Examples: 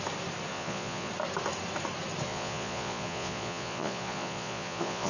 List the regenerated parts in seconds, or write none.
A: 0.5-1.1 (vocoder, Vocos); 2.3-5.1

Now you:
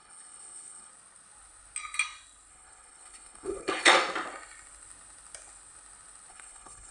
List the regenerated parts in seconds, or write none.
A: 0.0-0.9 (codec, HILCodec); 2.5-3.9; 6.3-6.9

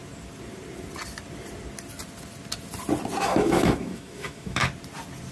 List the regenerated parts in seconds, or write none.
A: 3.2-4.6 (autoencoder, DAC-VAE)

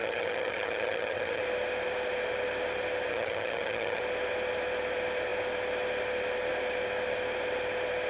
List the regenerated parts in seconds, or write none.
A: 0.0-1.4 (vocoder, HiFi-GAN); 3.1-4.0